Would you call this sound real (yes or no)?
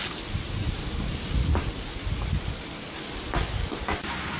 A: yes